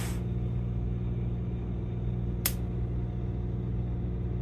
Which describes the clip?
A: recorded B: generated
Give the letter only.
A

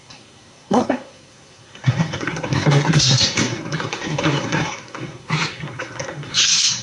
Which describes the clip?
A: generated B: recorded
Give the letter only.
A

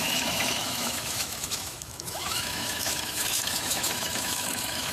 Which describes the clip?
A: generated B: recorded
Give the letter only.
A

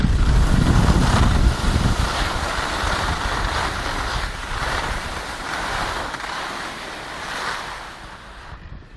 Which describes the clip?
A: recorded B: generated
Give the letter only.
B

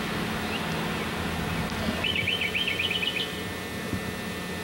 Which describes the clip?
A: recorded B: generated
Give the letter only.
A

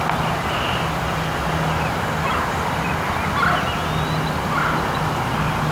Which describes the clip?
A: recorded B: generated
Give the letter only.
A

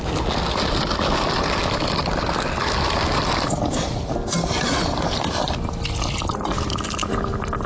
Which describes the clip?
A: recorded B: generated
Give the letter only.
A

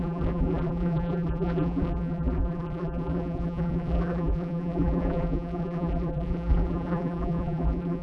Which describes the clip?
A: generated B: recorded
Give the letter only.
A